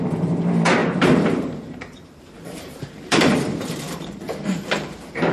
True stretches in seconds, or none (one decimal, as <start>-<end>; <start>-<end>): none